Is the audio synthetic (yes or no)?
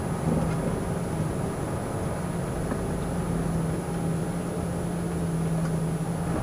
no